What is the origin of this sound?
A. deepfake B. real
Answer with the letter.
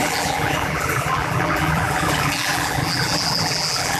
A